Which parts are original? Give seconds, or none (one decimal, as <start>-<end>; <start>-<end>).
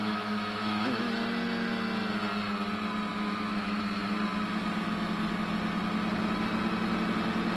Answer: 1.1-3.1; 3.8-7.6